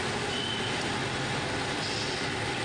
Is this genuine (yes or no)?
yes